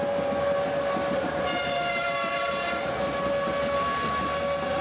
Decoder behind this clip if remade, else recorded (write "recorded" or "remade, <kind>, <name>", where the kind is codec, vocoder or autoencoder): recorded